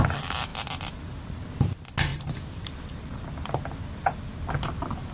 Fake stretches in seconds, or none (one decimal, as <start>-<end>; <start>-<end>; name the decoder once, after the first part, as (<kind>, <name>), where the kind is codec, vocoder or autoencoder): 0.5-1.4 (vocoder, BigVGAN v2); 2.1-4.5